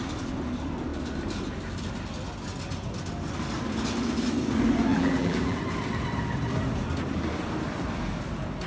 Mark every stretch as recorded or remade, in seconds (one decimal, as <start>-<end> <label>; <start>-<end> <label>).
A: 0.0-4.9 recorded; 4.9-5.6 remade; 5.6-8.7 recorded